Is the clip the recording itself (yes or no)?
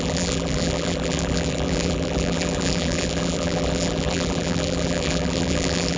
no